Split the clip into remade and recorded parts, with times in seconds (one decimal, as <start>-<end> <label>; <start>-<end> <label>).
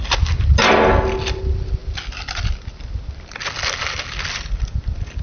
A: 0.0-5.2 recorded